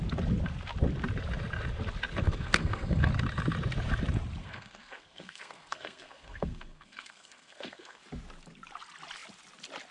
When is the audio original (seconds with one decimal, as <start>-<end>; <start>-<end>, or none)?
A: 0.0-2.2; 3.1-4.4; 8.0-9.9